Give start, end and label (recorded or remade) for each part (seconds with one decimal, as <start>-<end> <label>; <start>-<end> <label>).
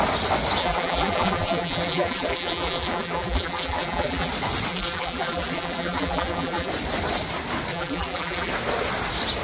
0.0-0.6 recorded; 0.6-4.3 remade; 4.3-4.7 recorded; 4.7-6.7 remade; 6.7-7.7 recorded; 7.7-8.5 remade; 8.5-9.4 recorded